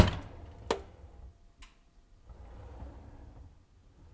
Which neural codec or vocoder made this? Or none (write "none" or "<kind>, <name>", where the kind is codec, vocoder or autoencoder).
none